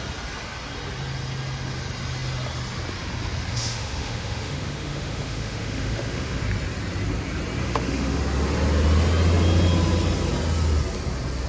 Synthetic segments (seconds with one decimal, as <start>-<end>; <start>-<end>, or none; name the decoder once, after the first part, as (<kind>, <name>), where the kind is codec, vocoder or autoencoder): 3.5-6.4 (autoencoder, DAC-VAE); 7.6-8.2